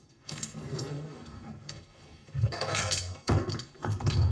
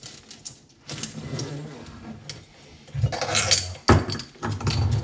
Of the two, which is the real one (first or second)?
second